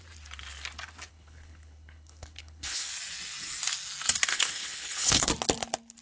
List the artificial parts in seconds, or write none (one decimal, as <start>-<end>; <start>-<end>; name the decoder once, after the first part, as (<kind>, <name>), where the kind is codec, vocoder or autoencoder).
1.1-2.9 (codec, HILCodec); 4.3-5.3